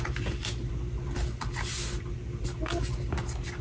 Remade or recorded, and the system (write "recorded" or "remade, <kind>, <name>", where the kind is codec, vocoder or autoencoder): recorded